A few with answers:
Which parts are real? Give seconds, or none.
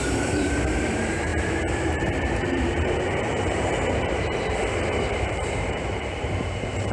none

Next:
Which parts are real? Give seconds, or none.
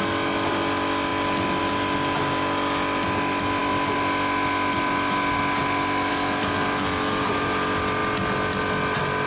0.0-9.3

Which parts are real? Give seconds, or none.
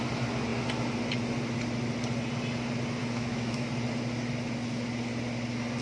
0.0-3.0; 3.7-5.8